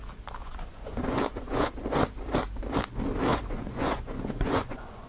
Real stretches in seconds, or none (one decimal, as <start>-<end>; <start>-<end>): 0.0-0.4; 1.7-3.3